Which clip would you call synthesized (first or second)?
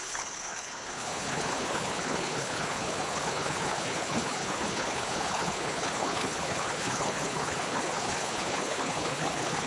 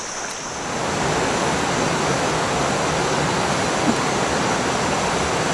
first